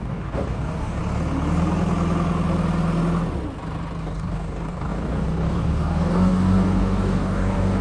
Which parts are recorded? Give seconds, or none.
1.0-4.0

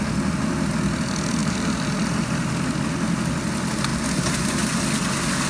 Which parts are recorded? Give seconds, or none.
0.0-1.4; 2.5-3.9; 4.8-5.5